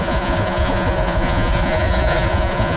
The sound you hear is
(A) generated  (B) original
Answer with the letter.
A